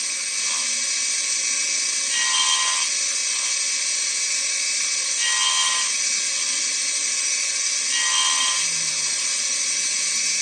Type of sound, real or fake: real